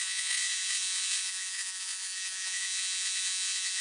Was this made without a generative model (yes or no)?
no